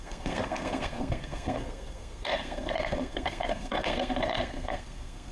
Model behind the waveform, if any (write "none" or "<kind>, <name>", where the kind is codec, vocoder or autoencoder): codec, SNAC